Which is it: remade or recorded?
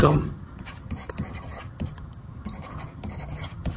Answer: remade